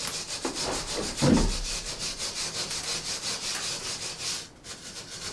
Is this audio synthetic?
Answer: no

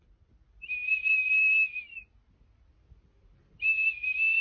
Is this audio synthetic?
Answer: no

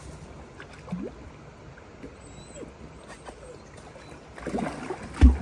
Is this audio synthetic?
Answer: no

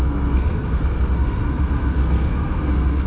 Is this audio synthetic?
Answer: yes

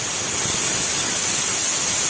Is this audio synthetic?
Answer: no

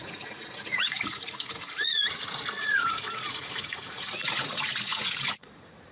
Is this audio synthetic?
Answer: yes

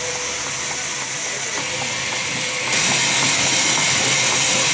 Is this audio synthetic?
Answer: no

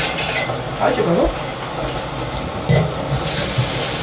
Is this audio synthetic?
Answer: no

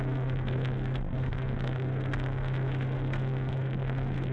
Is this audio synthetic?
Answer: yes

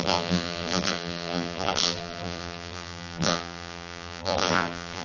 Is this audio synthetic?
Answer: yes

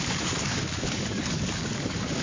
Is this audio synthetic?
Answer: yes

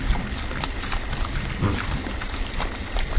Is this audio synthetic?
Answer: no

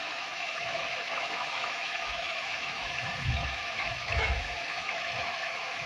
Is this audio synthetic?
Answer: yes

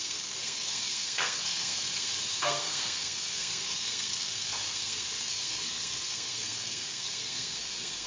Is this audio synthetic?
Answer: yes